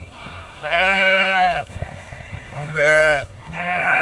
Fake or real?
fake